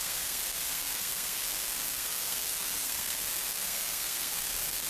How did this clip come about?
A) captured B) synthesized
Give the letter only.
B